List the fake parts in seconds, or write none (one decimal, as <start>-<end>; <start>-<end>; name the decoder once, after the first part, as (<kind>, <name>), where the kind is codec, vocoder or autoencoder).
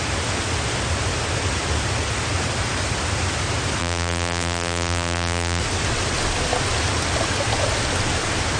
3.8-5.6 (vocoder, BigVGAN v2)